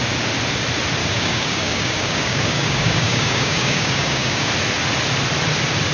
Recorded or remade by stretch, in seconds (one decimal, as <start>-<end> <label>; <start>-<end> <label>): 0.0-1.0 recorded; 1.0-4.5 remade; 4.5-5.9 recorded

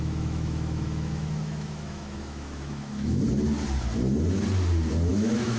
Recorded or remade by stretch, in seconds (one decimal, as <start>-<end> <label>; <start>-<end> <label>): 0.0-3.2 remade; 3.2-5.1 recorded; 5.1-5.6 remade

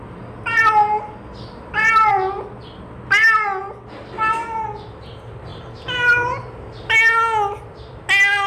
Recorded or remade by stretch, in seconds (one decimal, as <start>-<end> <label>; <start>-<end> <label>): 0.0-8.5 recorded

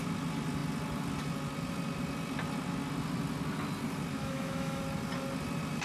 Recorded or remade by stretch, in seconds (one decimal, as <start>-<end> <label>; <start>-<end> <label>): 0.0-4.2 recorded; 4.2-4.8 remade; 4.8-5.8 recorded

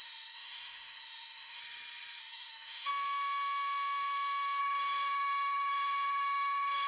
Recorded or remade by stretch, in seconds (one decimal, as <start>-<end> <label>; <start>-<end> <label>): 0.0-1.6 remade; 1.6-2.2 recorded; 2.2-2.9 remade; 2.9-4.6 recorded; 4.6-6.9 remade

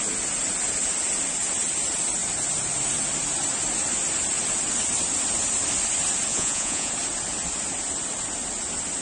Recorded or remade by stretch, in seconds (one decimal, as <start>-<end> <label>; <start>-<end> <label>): 0.0-6.3 recorded; 6.3-6.9 remade; 6.9-9.0 recorded